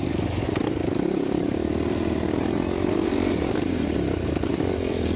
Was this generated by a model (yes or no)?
no